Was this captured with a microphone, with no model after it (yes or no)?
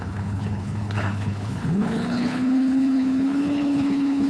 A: no